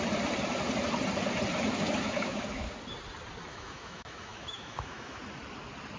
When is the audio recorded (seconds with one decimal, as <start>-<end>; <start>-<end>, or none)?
0.0-1.7; 2.7-3.5; 5.2-6.0